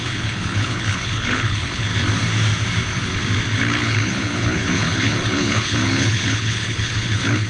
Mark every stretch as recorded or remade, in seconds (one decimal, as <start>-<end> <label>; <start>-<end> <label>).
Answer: 0.0-1.9 remade; 1.9-3.6 recorded; 3.6-7.5 remade